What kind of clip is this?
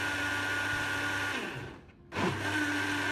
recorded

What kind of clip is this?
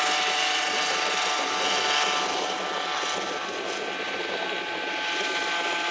recorded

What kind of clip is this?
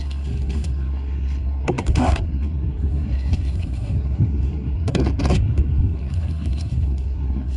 remade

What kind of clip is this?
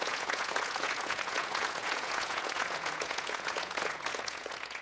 remade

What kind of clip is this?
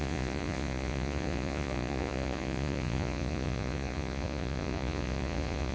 remade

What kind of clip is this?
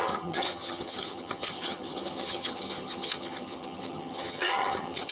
remade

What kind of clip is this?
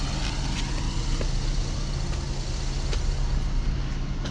recorded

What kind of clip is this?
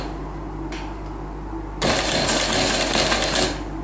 recorded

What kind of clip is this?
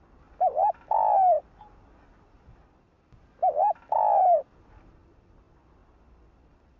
recorded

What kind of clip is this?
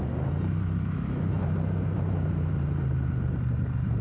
remade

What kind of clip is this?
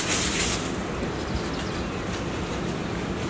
recorded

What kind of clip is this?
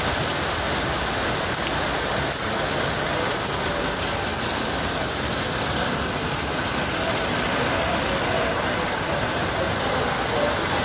recorded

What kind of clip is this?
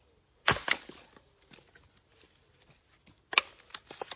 recorded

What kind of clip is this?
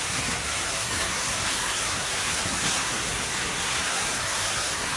remade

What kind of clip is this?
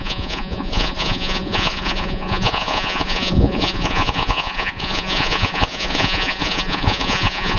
remade